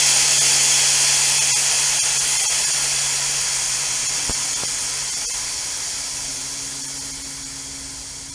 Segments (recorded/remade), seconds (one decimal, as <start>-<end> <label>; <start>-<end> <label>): 0.0-8.3 recorded